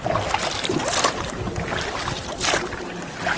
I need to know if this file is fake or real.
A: real